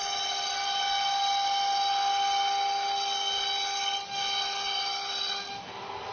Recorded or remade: recorded